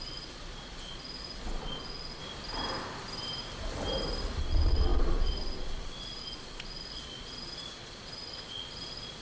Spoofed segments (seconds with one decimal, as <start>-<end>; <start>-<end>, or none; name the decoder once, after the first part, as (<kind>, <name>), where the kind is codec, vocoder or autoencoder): 0.0-2.2 (vocoder, Vocos); 4.4-9.2